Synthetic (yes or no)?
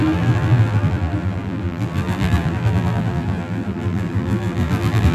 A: yes